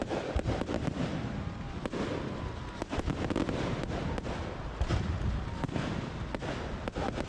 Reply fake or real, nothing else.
real